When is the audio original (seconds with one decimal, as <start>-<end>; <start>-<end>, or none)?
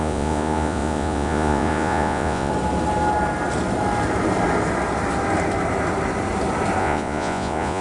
2.5-6.8